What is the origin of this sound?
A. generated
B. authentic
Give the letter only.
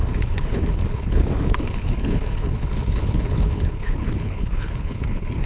A